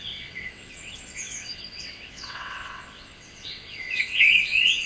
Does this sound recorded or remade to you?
remade